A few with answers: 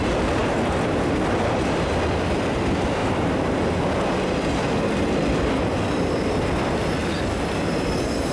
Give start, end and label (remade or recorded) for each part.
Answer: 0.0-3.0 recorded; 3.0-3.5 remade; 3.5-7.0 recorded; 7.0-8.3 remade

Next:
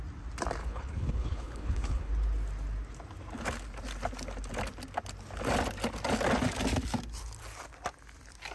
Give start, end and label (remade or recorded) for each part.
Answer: 0.0-0.6 recorded; 0.6-2.1 remade; 2.1-8.5 recorded